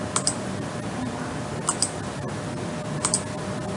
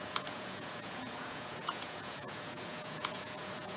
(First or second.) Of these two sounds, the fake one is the second